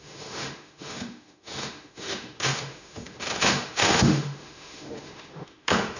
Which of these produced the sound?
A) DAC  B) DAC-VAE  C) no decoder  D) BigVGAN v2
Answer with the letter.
B